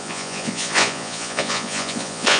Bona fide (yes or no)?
no